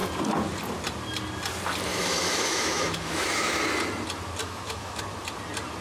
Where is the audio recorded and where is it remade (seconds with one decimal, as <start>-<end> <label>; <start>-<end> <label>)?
0.0-1.9 recorded; 1.9-3.6 remade; 3.6-4.4 recorded; 4.4-5.0 remade; 5.0-5.8 recorded